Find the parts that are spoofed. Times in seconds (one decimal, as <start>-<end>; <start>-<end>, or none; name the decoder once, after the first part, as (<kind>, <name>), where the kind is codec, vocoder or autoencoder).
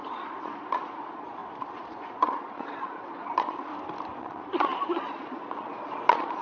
0.0-3.7 (vocoder, Vocos); 4.2-6.4